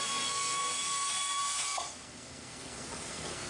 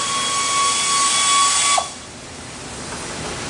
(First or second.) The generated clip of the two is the first